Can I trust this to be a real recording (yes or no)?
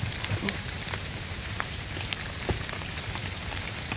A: no